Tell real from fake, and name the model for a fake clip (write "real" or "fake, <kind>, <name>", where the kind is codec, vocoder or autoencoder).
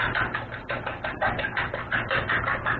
fake, vocoder, BigVGAN v2